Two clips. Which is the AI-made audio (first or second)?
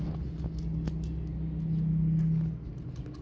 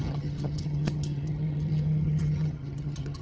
second